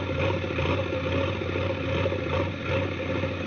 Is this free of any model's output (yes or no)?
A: yes